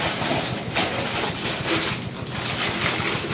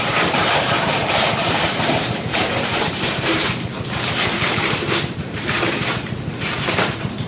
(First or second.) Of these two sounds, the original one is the first